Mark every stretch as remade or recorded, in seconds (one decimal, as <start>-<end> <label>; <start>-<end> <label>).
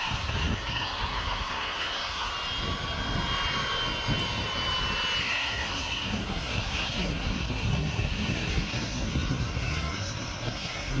0.0-2.3 remade; 2.3-5.2 recorded; 5.2-11.0 remade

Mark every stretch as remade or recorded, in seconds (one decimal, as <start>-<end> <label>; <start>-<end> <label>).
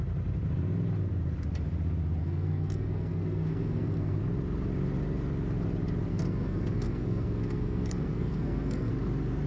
0.0-2.2 recorded; 2.2-4.2 remade; 4.2-6.1 recorded; 6.1-8.9 remade; 8.9-9.5 recorded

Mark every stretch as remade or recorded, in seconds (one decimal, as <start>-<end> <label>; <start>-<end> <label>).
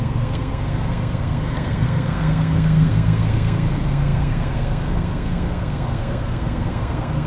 0.0-7.3 remade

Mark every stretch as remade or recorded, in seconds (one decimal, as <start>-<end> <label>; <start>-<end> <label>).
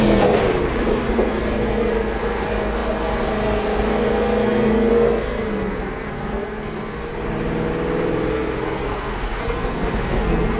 0.0-0.4 remade; 0.4-1.1 recorded; 1.1-7.1 remade; 7.1-8.3 recorded; 8.3-10.6 remade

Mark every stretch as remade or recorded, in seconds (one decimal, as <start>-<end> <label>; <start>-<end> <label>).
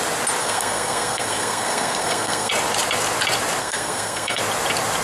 0.0-0.4 recorded; 0.4-2.5 remade; 2.5-3.6 recorded; 3.6-4.4 remade; 4.4-5.0 recorded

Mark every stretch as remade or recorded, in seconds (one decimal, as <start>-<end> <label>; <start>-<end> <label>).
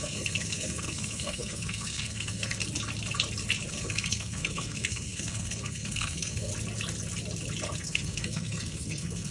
0.0-2.6 remade; 2.6-3.7 recorded; 3.7-6.5 remade; 6.5-7.8 recorded; 7.8-9.3 remade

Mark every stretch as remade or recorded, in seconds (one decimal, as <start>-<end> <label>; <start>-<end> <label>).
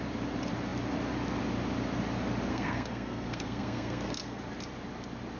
0.0-2.5 recorded; 2.5-4.4 remade; 4.4-5.4 recorded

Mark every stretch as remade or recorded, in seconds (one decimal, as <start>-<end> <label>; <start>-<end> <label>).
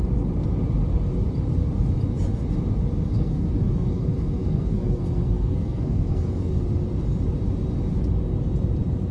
0.0-3.1 recorded; 3.1-6.6 remade; 6.6-9.1 recorded